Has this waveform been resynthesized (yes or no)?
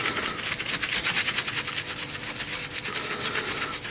no